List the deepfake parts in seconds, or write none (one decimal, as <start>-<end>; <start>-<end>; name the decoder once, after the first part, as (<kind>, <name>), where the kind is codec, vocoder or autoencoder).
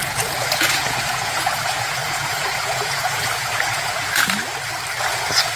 0.0-4.2 (vocoder, Vocos); 5.0-5.6